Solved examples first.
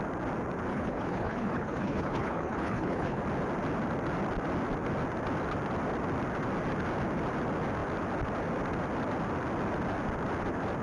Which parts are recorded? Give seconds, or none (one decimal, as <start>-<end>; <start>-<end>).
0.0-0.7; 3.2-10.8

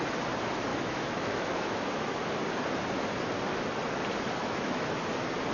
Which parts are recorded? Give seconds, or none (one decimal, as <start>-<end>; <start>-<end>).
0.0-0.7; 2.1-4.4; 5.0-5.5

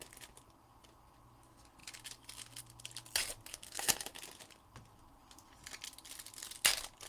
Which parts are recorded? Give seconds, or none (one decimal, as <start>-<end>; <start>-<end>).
0.0-3.5; 4.1-7.1

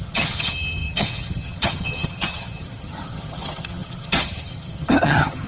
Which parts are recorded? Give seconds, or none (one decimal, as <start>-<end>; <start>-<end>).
none